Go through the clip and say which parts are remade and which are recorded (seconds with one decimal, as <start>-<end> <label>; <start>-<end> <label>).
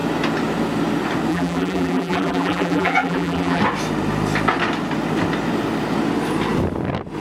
0.0-1.3 recorded; 1.3-3.6 remade; 3.6-7.2 recorded